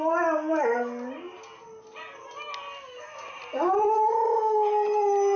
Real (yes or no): yes